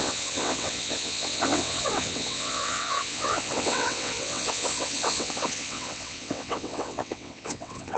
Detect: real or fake fake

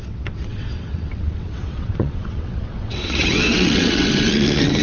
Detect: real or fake fake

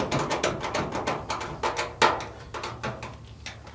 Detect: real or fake real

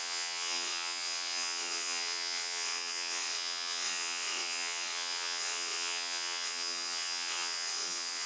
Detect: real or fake fake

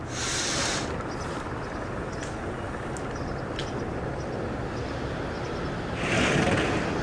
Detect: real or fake real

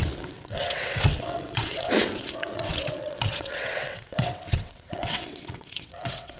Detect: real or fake fake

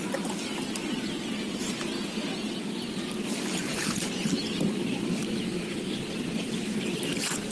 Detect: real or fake real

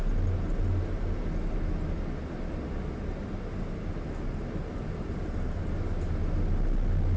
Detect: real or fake real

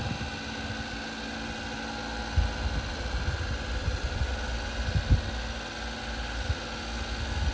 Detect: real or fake real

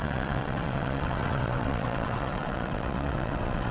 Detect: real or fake fake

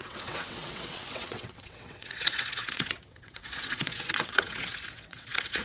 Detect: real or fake fake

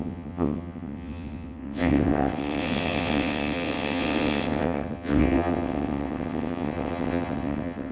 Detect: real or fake fake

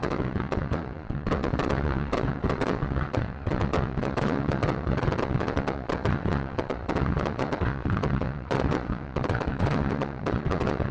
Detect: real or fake fake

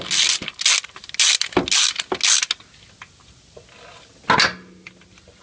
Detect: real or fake real